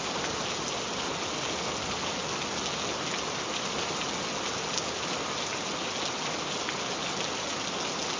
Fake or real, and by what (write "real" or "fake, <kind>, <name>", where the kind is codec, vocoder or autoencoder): real